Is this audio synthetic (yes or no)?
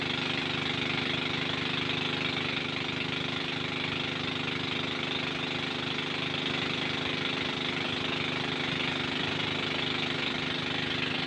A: no